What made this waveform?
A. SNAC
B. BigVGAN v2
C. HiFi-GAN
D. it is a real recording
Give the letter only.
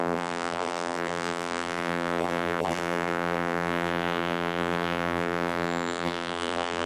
B